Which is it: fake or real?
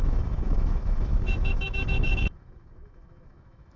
fake